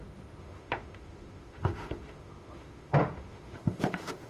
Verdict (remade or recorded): remade